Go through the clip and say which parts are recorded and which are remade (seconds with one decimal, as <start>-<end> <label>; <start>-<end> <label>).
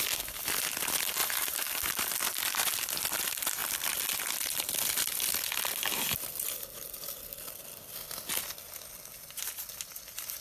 0.0-1.2 recorded; 1.2-2.0 remade; 2.0-10.4 recorded